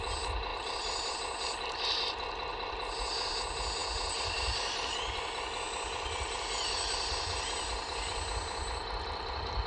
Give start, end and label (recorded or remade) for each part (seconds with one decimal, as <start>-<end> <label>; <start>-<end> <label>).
0.0-0.5 recorded; 0.5-1.1 remade; 1.1-2.5 recorded; 2.5-3.0 remade; 3.0-9.7 recorded